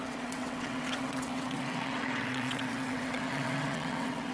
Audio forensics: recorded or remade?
remade